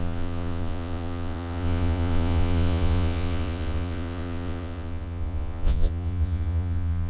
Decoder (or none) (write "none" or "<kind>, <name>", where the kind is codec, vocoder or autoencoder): vocoder, Vocos